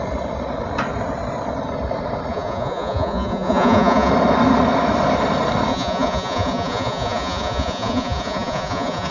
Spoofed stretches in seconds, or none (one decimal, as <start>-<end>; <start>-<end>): 2.3-4.1; 5.7-9.1